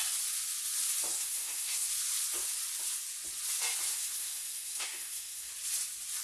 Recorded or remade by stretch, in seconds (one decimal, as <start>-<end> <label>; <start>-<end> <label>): 0.0-1.1 recorded; 1.1-1.9 remade; 1.9-3.9 recorded; 3.9-5.5 remade; 5.5-6.2 recorded